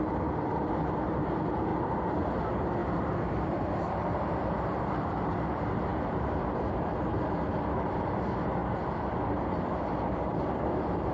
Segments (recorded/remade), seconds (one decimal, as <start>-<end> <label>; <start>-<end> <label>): 0.0-1.7 remade; 1.7-2.4 recorded; 2.4-2.8 remade; 2.8-3.8 recorded; 3.8-8.6 remade; 8.6-10.1 recorded; 10.1-11.1 remade